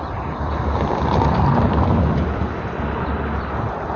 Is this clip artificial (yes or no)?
yes